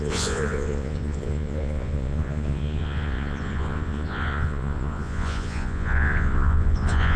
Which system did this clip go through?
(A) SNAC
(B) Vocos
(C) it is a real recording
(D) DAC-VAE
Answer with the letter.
B